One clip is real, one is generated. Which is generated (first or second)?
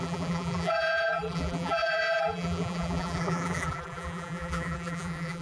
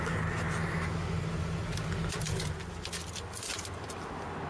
first